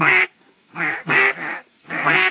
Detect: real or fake fake